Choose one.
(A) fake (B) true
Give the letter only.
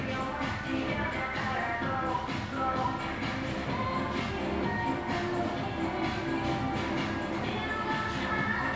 B